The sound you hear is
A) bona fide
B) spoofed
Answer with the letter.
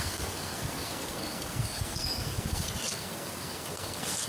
B